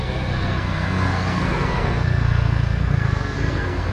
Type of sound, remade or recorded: remade